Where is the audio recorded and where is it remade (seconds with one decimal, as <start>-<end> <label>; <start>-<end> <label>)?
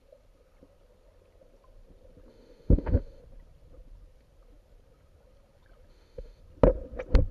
0.0-2.3 recorded; 2.3-3.2 remade; 3.2-5.9 recorded; 5.9-6.4 remade; 6.4-7.3 recorded